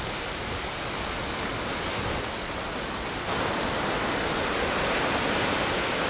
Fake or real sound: real